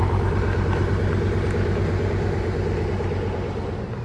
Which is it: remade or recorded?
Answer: recorded